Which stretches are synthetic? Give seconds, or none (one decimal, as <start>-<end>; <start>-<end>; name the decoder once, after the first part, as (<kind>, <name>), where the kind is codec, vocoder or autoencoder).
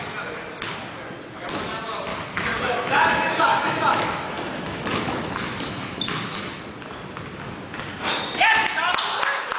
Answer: 2.1-6.6 (autoencoder, DAC-VAE)